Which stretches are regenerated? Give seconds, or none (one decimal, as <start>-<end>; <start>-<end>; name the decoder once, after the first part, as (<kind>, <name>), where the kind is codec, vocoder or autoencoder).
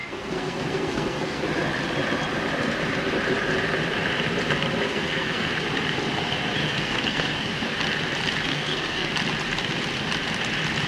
0.0-1.4 (codec, SNAC); 4.9-5.5; 6.6-7.5; 8.5-9.1